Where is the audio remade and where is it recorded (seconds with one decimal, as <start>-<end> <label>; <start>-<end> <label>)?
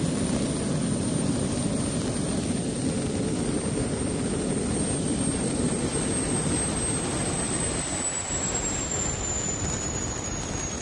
0.0-10.8 recorded